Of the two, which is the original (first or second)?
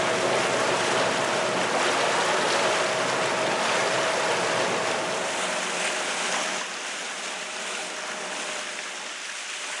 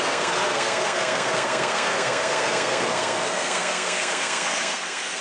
first